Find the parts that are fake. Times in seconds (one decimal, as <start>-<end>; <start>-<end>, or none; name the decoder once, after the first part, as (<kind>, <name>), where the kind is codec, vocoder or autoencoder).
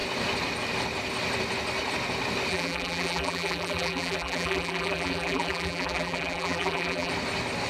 2.5-7.1 (vocoder, BigVGAN v2)